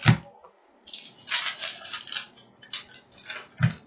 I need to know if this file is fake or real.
real